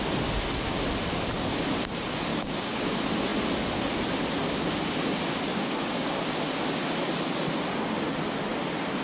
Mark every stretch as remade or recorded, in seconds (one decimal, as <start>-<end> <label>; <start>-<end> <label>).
0.0-2.3 recorded; 2.3-2.9 remade; 2.9-5.5 recorded; 5.5-6.1 remade; 6.1-9.0 recorded